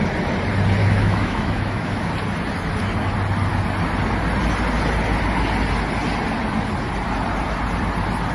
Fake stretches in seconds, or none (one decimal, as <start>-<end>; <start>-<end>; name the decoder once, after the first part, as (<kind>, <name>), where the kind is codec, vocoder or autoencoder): 0.8-2.1 (autoencoder, DAC-VAE)